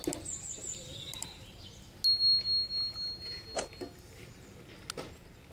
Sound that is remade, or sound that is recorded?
recorded